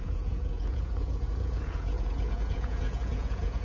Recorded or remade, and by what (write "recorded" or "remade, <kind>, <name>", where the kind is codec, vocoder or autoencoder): remade, vocoder, Vocos